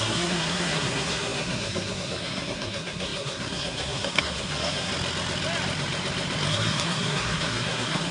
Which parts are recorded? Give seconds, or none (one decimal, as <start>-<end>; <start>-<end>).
4.9-6.5